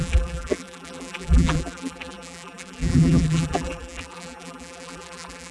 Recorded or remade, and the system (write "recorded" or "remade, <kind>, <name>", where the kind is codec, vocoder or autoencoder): remade, vocoder, BigVGAN v2